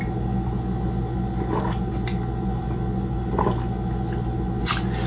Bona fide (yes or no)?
yes